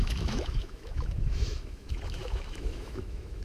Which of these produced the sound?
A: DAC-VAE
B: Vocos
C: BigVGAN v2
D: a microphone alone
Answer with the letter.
A